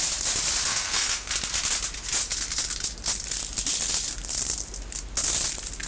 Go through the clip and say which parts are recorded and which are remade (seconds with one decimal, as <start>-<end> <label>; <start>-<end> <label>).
0.0-0.7 recorded; 0.7-1.3 remade; 1.3-5.9 recorded